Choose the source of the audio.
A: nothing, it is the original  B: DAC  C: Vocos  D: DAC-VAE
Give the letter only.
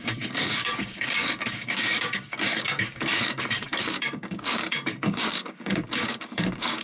B